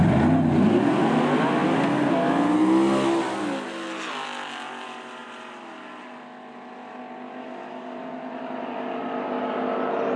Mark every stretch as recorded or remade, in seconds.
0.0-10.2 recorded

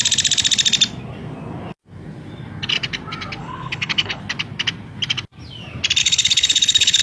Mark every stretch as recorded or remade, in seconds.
0.0-3.4 recorded; 3.4-4.2 remade; 4.2-6.0 recorded; 6.0-7.0 remade